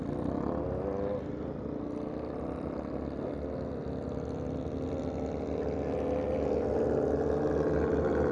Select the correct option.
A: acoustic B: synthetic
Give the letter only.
A